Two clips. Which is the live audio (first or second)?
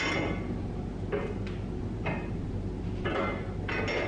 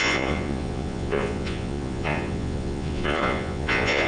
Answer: first